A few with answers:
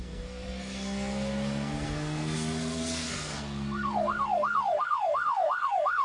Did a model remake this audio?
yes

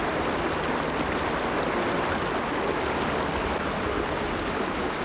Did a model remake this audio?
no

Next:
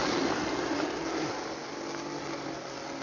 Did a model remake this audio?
no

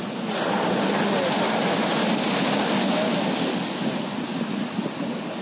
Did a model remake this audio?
no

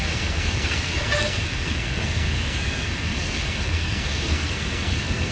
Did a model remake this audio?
yes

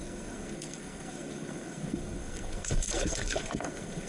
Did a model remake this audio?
yes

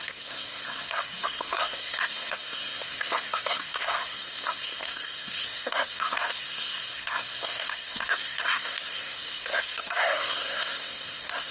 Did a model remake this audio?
yes